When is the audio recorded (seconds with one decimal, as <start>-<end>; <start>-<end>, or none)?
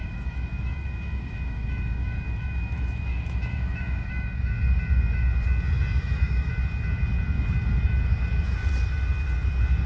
4.5-5.9; 6.5-9.9